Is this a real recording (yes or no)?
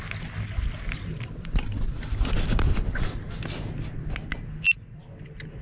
yes